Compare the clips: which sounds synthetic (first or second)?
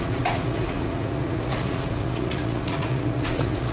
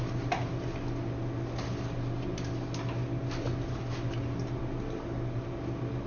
first